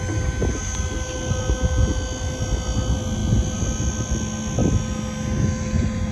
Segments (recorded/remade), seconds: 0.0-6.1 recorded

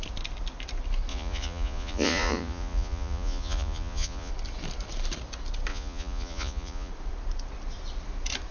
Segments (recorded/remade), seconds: 0.0-1.1 recorded; 1.1-4.3 remade; 4.3-5.7 recorded; 5.7-6.9 remade; 6.9-8.5 recorded